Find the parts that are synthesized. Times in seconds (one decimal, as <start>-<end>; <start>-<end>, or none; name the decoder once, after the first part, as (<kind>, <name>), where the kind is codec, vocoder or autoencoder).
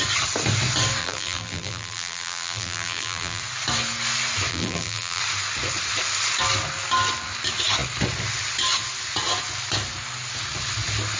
1.0-3.4 (vocoder, BigVGAN v2); 4.5-5.2